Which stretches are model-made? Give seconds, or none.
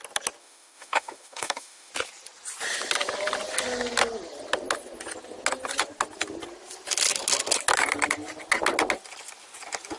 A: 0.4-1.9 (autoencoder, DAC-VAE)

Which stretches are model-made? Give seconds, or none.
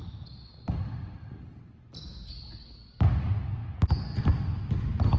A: none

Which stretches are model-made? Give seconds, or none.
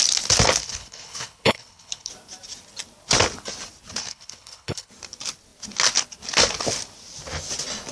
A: 0.6-2.1 (codec, HILCodec); 4.0-4.9